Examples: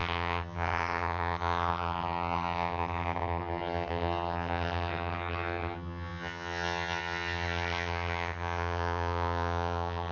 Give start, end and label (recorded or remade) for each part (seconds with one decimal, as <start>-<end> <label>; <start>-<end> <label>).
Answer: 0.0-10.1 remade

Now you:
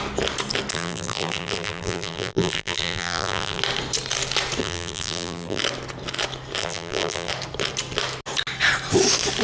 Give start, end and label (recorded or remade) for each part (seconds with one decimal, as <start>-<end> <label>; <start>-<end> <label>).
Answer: 0.0-0.7 recorded; 0.7-3.6 remade; 3.6-4.6 recorded; 4.6-5.6 remade; 5.6-6.6 recorded; 6.6-7.3 remade; 7.3-9.4 recorded

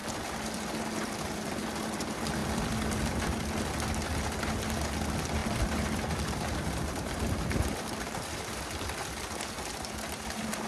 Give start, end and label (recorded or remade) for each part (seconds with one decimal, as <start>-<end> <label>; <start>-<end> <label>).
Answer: 0.0-2.4 recorded; 2.4-3.4 remade; 3.4-5.4 recorded; 5.4-9.2 remade; 9.2-10.7 recorded

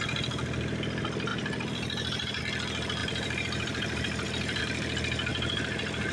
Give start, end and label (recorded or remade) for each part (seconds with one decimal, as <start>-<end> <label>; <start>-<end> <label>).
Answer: 0.0-1.3 recorded; 1.3-2.4 remade; 2.4-3.0 recorded; 3.0-4.6 remade; 4.6-5.3 recorded; 5.3-6.1 remade